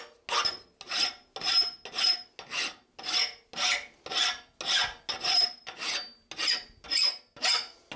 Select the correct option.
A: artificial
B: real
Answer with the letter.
B